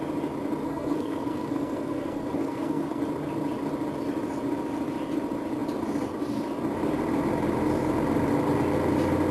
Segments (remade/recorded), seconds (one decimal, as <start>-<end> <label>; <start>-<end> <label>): 0.0-0.6 recorded; 0.6-3.0 remade; 3.0-9.3 recorded